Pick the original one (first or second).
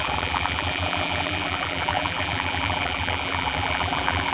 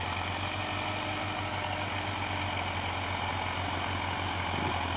second